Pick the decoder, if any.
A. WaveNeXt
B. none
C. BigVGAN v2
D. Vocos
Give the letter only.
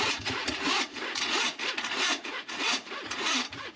D